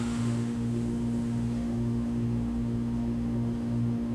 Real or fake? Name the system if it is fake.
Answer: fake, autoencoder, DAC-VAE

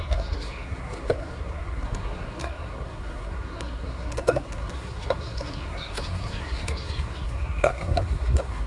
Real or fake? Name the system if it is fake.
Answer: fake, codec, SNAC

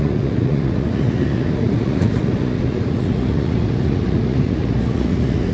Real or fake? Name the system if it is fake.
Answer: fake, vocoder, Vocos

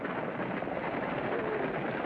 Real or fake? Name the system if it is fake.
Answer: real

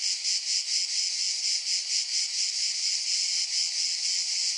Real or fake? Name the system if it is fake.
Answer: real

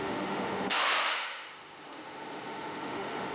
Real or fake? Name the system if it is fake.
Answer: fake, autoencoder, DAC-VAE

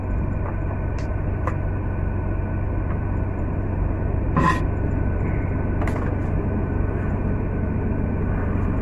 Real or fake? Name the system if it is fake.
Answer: real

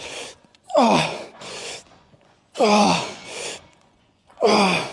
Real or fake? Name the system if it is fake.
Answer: fake, vocoder, Vocos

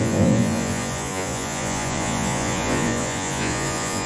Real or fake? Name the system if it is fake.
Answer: fake, vocoder, Vocos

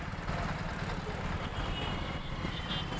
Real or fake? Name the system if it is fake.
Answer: real